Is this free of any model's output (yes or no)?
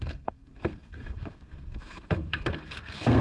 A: no